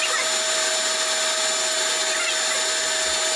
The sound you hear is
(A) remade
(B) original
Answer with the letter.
B